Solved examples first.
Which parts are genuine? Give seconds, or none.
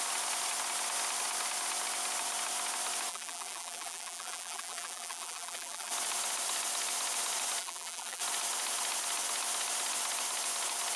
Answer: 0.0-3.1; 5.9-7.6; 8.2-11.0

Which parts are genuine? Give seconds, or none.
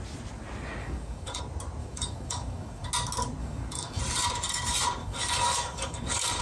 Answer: 0.0-0.8; 1.4-1.8; 2.9-3.4; 4.0-5.0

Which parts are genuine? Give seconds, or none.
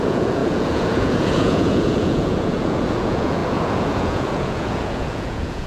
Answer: none